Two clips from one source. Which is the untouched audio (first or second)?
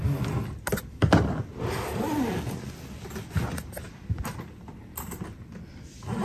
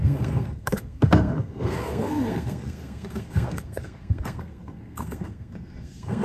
first